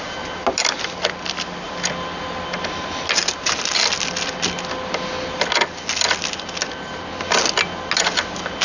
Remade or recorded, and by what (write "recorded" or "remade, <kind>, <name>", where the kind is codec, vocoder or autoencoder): recorded